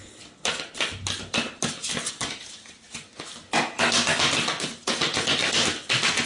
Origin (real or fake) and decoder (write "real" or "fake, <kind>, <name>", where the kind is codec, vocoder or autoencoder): real